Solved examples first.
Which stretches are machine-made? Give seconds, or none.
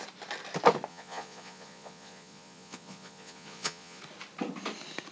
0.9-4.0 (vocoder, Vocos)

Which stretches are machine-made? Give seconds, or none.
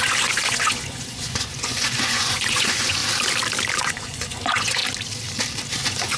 0.0-3.0 (vocoder, Vocos); 3.8-4.8; 5.7-6.2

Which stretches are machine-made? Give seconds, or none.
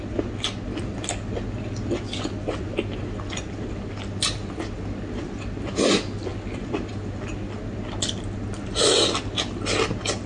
none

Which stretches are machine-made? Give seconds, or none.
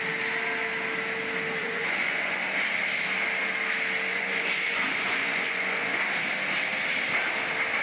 1.6-2.4 (vocoder, Vocos); 4.1-6.1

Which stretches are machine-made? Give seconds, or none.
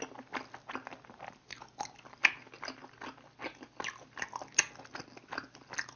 none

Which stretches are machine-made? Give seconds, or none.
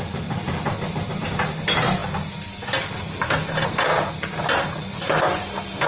none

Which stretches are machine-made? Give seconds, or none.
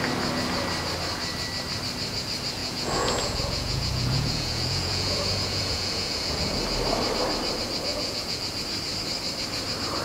2.6-6.6 (vocoder, Vocos); 7.9-8.4